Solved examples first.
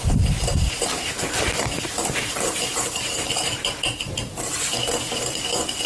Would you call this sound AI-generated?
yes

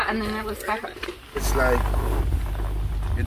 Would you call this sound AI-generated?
no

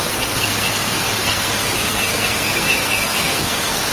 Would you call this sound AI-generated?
yes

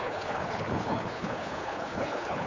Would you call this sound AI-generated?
yes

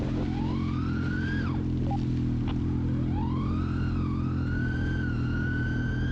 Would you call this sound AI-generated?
no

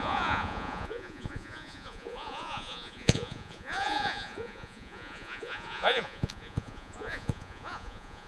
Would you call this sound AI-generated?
yes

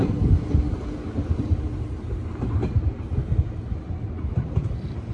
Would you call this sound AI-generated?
no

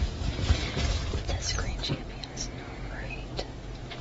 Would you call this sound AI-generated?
no